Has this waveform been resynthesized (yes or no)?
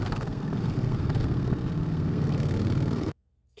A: yes